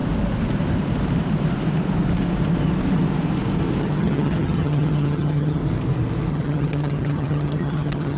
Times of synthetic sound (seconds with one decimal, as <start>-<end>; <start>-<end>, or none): 3.8-5.6; 6.3-8.2